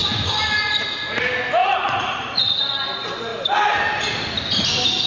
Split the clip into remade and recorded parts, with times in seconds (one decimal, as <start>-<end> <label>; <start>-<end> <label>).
0.0-1.6 recorded; 1.6-2.6 remade; 2.6-5.1 recorded